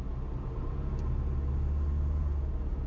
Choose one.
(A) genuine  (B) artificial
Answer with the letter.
A